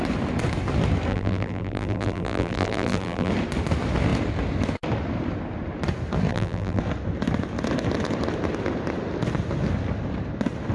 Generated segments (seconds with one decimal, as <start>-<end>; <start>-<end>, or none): 1.1-3.3; 6.3-6.8